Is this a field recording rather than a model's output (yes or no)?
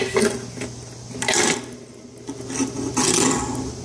yes